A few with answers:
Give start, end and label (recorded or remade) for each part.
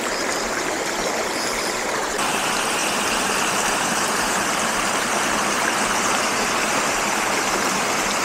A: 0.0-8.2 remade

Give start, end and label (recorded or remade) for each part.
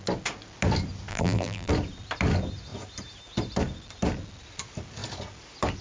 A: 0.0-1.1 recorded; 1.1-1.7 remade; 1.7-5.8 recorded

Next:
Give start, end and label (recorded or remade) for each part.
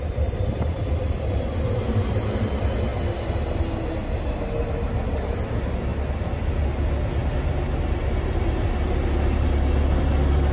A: 0.0-10.5 recorded